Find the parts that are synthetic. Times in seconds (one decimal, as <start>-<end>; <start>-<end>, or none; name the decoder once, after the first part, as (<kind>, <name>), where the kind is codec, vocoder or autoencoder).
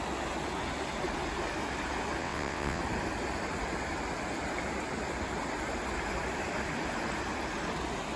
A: 2.2-2.8 (vocoder, WaveNeXt)